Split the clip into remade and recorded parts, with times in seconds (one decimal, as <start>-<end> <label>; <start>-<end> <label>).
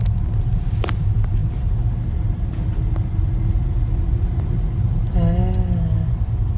0.0-6.6 recorded